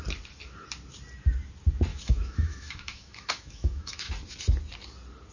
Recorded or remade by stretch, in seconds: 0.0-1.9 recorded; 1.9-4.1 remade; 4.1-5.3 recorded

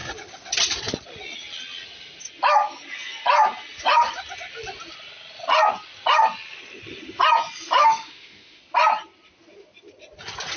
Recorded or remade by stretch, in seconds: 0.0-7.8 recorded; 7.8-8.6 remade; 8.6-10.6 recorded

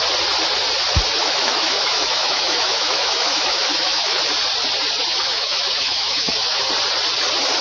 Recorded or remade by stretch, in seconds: 0.0-1.2 recorded; 1.2-4.2 remade; 4.2-5.1 recorded; 5.1-6.7 remade; 6.7-7.6 recorded

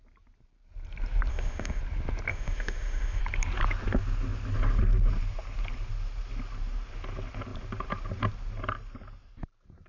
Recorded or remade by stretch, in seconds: 0.0-1.3 recorded; 1.3-1.8 remade; 1.8-2.3 recorded; 2.3-3.2 remade; 3.2-9.9 recorded

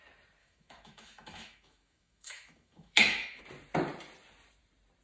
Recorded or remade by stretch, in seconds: 0.0-0.4 recorded; 0.4-3.4 remade; 3.4-5.0 recorded

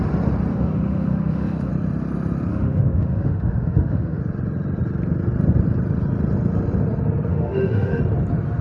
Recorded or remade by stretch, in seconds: 0.0-0.5 recorded; 0.5-1.7 remade; 1.7-2.5 recorded; 2.5-4.2 remade; 4.2-7.3 recorded; 7.3-8.0 remade; 8.0-8.6 recorded